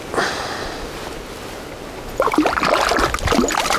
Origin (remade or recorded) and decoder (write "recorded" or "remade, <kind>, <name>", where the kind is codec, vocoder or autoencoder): recorded